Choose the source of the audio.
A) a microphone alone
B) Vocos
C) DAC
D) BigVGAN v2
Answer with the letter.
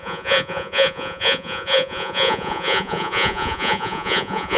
B